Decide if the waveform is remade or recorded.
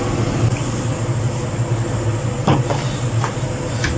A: recorded